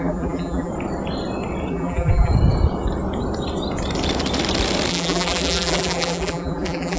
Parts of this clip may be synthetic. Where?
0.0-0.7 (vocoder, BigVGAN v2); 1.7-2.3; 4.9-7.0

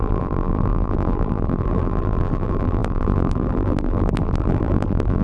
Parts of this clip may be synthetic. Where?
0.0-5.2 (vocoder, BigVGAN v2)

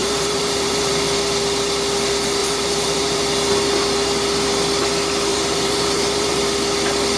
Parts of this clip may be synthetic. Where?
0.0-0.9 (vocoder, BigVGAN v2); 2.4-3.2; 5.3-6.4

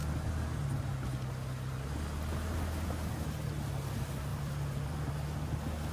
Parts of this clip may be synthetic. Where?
4.3-5.1 (vocoder, BigVGAN v2)

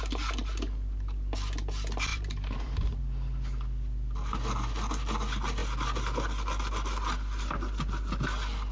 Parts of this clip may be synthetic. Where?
2.1-3.0 (vocoder, BigVGAN v2)